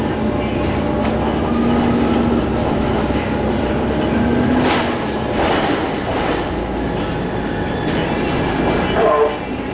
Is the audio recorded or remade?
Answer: recorded